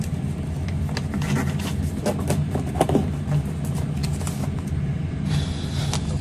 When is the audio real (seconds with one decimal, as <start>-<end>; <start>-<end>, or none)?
0.0-6.2